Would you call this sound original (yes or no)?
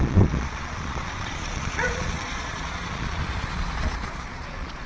no